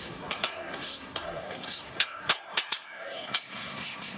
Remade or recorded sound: remade